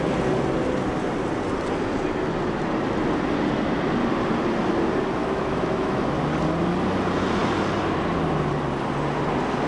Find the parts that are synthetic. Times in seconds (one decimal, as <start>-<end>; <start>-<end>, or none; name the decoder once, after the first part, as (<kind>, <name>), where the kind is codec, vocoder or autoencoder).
5.2-6.0 (autoencoder, DAC-VAE)

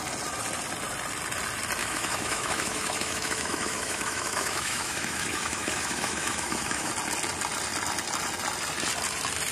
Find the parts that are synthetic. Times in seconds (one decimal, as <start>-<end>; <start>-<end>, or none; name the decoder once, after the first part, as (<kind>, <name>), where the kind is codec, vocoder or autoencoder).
1.8-6.9 (autoencoder, DAC-VAE)

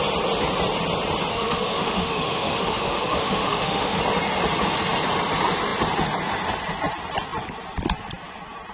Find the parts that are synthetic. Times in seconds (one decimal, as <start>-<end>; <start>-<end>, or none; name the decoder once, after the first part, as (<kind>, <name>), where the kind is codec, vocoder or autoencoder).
1.3-4.0 (autoencoder, DAC-VAE)

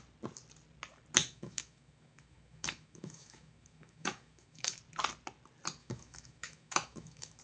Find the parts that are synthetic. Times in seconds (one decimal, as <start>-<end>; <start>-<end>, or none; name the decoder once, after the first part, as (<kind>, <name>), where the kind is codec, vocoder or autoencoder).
1.2-4.8 (autoencoder, DAC-VAE); 5.8-7.4

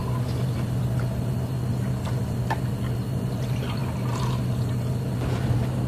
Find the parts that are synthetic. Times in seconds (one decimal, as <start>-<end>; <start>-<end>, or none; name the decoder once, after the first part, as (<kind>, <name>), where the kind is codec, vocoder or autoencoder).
none

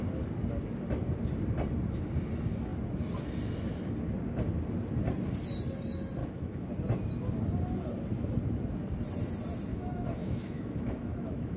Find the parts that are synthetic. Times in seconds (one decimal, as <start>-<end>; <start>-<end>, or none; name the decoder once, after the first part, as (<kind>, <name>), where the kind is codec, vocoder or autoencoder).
6.2-6.7 (autoencoder, DAC-VAE); 9.7-11.6